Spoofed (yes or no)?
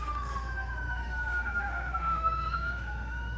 yes